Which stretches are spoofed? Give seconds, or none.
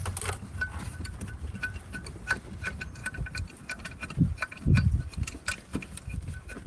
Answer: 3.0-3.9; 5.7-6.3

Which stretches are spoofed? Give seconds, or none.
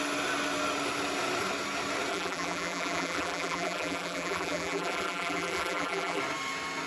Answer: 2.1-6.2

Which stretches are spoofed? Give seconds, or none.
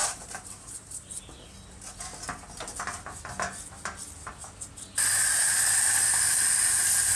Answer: 0.0-1.2